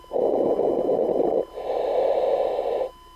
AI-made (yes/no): no